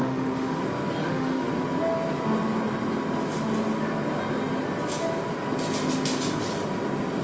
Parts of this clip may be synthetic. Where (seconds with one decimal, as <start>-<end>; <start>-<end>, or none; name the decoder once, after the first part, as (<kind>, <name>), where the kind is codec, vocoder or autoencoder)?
0.0-0.6 (autoencoder, DAC-VAE); 1.0-1.5